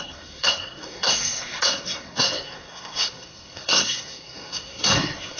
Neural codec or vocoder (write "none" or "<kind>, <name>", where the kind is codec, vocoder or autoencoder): codec, SNAC